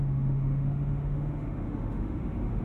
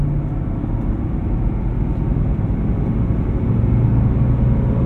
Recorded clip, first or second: second